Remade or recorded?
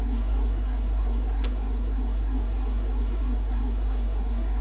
remade